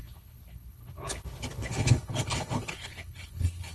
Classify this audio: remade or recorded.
remade